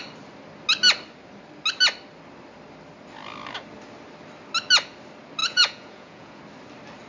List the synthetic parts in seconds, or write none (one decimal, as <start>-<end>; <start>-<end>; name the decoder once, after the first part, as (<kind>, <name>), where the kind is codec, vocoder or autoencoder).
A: 5.4-6.4 (vocoder, Vocos)